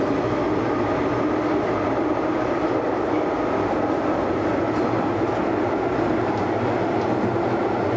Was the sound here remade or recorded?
recorded